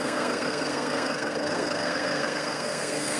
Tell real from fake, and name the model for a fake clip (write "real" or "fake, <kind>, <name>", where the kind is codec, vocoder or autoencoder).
fake, codec, SNAC